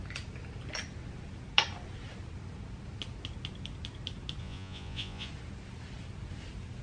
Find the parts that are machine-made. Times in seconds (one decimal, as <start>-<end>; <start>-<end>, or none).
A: 4.4-5.3